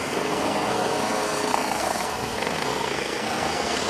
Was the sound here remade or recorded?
remade